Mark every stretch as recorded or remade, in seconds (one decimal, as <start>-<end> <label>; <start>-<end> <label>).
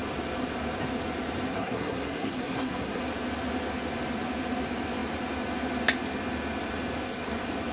0.0-1.5 recorded; 1.5-3.0 remade; 3.0-7.7 recorded